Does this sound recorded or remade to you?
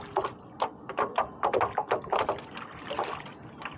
recorded